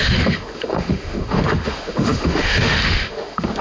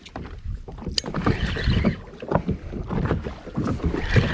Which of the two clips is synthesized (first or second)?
first